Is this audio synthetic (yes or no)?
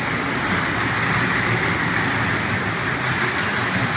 no